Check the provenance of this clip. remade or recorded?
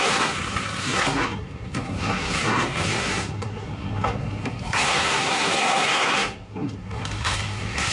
remade